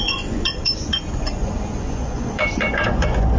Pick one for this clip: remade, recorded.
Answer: remade